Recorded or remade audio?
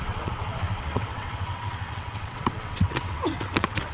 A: remade